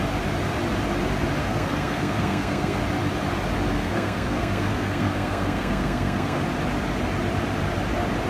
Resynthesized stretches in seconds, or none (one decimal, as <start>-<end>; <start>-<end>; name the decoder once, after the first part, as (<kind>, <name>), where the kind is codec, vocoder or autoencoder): 1.4-2.8 (codec, SNAC); 3.7-6.4